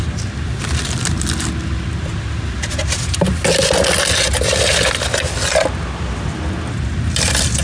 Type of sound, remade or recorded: recorded